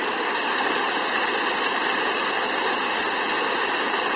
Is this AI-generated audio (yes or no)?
no